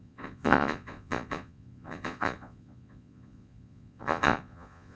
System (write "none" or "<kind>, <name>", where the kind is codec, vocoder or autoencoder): vocoder, Vocos